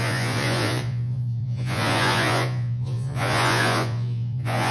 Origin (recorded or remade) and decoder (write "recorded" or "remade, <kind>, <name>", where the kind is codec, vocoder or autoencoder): remade, vocoder, Vocos